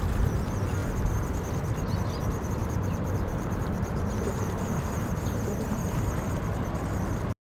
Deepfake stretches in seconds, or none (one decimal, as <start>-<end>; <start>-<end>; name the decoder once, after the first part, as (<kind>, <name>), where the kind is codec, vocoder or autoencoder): 2.6-6.0 (vocoder, BigVGAN v2)